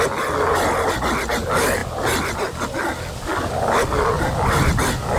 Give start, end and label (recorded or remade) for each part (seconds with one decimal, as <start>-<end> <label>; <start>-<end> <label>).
0.0-5.2 recorded